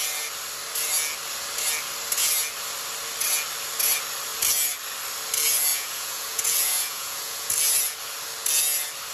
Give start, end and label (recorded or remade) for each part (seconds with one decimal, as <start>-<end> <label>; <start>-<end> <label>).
0.0-5.7 recorded; 5.7-7.5 remade; 7.5-9.1 recorded